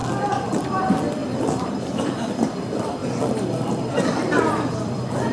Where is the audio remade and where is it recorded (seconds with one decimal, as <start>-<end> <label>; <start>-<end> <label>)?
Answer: 0.0-3.0 remade; 3.0-4.5 recorded; 4.5-5.3 remade